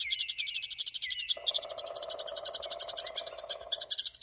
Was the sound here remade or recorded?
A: recorded